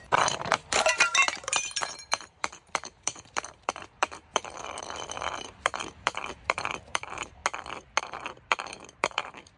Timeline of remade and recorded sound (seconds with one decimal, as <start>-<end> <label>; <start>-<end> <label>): 0.0-7.4 remade; 7.4-8.0 recorded; 8.0-9.6 remade